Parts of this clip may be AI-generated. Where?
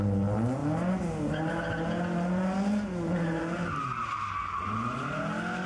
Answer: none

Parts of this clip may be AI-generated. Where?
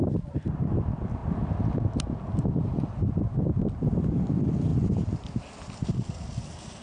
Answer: none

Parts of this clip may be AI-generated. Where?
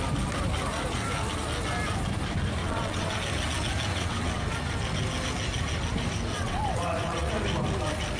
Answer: 2.6-3.2 (vocoder, WaveNeXt); 3.9-4.4; 6.3-7.3